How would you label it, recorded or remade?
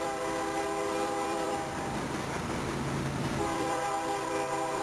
remade